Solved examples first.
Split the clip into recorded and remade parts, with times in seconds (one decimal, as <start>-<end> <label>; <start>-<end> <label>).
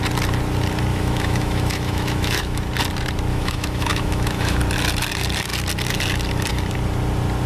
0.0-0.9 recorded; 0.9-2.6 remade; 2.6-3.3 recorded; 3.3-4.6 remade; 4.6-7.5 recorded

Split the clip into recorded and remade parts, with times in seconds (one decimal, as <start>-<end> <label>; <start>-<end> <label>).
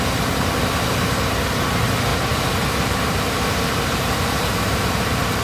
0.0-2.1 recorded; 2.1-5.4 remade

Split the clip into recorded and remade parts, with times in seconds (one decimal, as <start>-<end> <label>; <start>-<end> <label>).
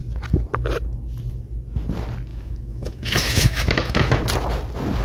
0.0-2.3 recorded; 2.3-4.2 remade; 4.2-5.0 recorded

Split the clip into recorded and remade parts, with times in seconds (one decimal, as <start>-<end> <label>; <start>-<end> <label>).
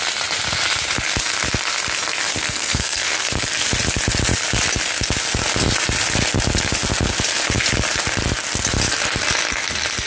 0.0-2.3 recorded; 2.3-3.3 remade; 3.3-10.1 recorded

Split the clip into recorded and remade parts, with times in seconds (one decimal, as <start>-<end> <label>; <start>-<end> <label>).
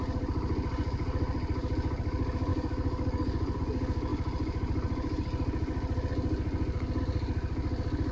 0.0-2.5 recorded; 2.5-3.6 remade; 3.6-8.1 recorded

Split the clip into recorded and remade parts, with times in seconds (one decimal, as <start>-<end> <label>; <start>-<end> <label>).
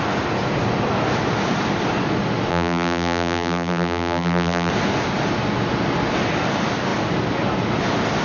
0.0-2.5 recorded; 2.5-4.7 remade; 4.7-8.2 recorded